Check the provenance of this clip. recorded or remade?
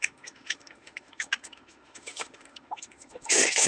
remade